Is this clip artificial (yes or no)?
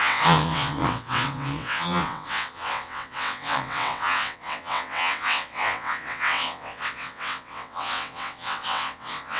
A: yes